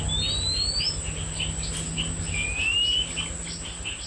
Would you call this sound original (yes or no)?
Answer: yes